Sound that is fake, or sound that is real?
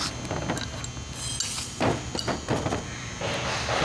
real